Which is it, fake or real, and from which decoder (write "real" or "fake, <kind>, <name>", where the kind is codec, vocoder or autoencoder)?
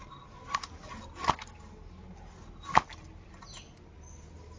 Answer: real